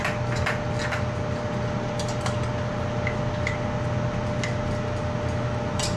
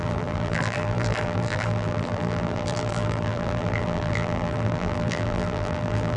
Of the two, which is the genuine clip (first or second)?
first